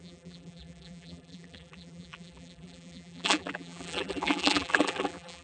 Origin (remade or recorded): remade